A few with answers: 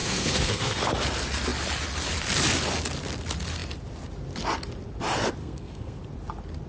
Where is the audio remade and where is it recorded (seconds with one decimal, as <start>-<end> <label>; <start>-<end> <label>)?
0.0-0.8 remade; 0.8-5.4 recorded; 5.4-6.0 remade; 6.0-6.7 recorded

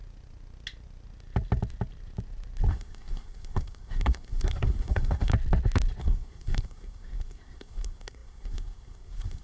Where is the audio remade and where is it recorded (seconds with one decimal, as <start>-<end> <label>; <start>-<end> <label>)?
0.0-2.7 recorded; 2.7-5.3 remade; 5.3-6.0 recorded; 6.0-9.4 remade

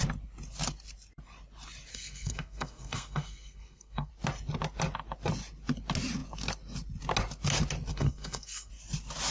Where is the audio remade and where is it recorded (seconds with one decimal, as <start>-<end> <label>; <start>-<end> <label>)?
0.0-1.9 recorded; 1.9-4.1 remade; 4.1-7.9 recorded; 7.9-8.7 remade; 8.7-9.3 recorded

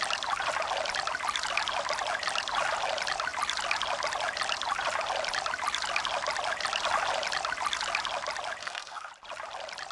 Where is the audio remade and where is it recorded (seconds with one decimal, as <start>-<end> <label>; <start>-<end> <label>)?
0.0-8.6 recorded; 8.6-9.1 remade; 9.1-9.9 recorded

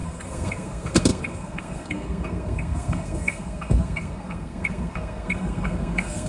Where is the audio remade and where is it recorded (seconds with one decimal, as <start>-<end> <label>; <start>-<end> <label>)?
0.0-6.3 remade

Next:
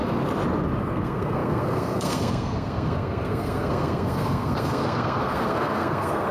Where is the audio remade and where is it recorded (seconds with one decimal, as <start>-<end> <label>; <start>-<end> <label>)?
0.0-0.8 recorded; 0.8-6.3 remade

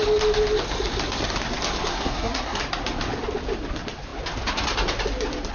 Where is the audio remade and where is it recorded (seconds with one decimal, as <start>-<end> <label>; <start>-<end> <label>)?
0.0-1.9 recorded; 1.9-2.6 remade; 2.6-5.5 recorded

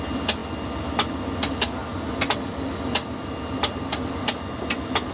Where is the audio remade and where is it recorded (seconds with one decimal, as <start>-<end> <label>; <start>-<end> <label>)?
0.0-5.1 recorded